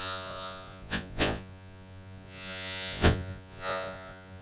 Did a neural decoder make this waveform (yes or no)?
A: yes